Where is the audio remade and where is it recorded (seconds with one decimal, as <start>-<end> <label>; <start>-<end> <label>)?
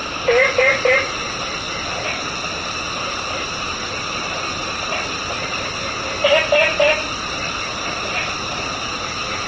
0.0-9.5 recorded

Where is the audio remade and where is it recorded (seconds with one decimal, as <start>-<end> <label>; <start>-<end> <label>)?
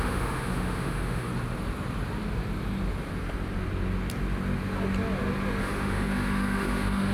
0.0-1.3 remade; 1.3-5.6 recorded; 5.6-7.1 remade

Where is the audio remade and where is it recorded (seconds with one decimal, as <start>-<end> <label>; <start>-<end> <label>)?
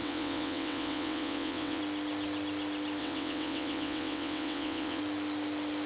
0.0-1.8 remade; 1.8-3.0 recorded; 3.0-5.0 remade; 5.0-5.9 recorded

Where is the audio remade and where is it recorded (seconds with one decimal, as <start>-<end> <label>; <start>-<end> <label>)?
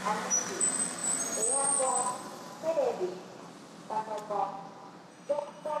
0.0-5.1 recorded; 5.1-5.8 remade